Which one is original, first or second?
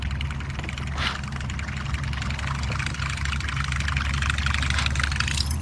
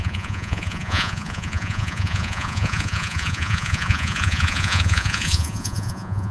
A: first